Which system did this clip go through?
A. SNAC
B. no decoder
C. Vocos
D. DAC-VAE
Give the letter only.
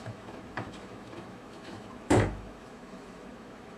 D